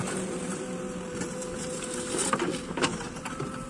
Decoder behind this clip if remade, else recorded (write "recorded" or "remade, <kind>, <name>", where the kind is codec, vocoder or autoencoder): remade, vocoder, BigVGAN v2